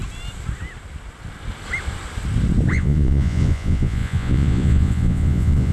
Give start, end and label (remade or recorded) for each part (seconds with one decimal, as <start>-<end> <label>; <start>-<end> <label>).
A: 0.0-2.7 recorded; 2.7-5.7 remade